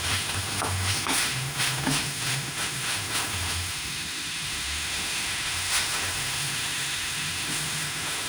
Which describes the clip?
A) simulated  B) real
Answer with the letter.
A